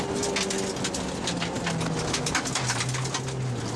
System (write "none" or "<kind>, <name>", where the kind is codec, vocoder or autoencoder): none